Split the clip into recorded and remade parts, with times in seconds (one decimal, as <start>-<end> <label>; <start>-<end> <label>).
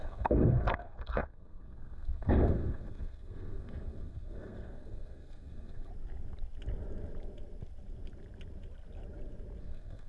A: 0.0-5.9 remade; 5.9-9.6 recorded; 9.6-10.1 remade